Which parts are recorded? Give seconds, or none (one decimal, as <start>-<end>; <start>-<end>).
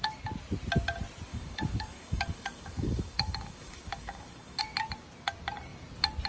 0.0-1.3; 4.6-6.3